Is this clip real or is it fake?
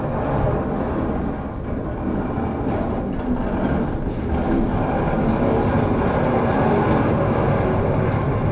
real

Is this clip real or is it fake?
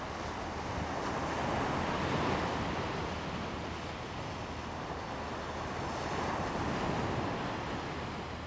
real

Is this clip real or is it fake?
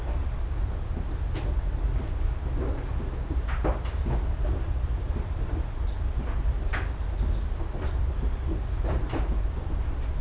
real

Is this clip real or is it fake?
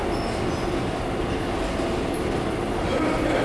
real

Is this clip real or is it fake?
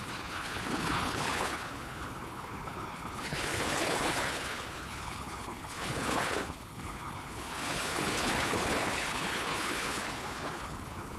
fake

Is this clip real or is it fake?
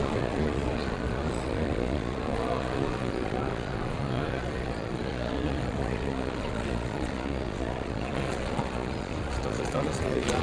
fake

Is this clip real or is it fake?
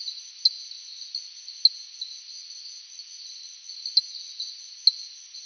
real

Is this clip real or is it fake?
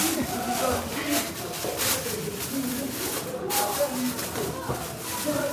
real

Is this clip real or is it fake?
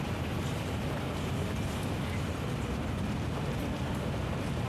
real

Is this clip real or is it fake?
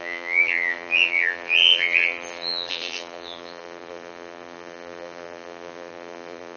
fake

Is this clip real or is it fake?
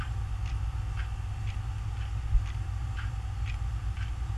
real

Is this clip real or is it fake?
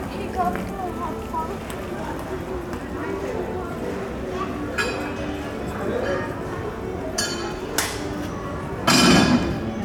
real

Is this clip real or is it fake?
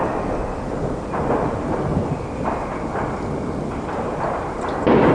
real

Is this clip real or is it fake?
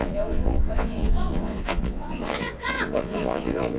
fake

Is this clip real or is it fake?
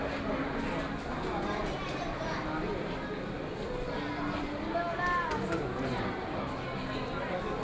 real